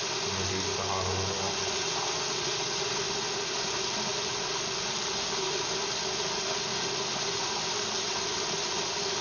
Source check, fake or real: real